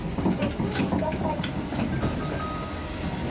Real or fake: real